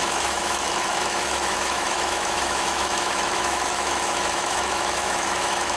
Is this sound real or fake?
fake